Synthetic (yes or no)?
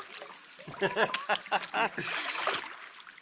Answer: no